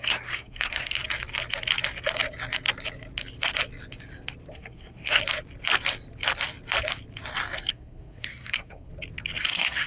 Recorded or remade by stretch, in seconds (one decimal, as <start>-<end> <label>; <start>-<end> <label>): 0.0-1.0 remade; 1.0-4.5 recorded; 4.5-5.2 remade; 5.2-7.7 recorded; 7.7-8.9 remade; 8.9-9.4 recorded; 9.4-9.9 remade